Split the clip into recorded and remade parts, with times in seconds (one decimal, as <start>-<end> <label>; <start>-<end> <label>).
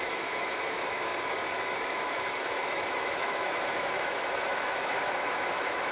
0.0-1.1 remade; 1.1-1.7 recorded; 1.7-5.9 remade